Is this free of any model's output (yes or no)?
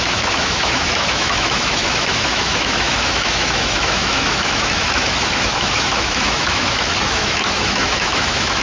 no